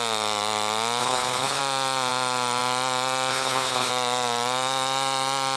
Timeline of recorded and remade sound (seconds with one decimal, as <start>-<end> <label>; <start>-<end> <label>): 0.0-1.0 recorded; 1.0-1.6 remade; 1.6-3.3 recorded; 3.3-3.9 remade; 3.9-5.6 recorded